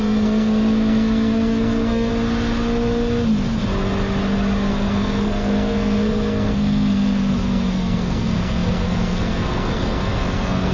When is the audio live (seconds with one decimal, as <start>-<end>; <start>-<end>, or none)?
2.1-4.7